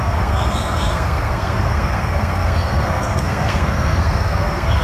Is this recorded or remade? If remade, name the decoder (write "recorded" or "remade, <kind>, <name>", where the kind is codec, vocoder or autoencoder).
remade, codec, SNAC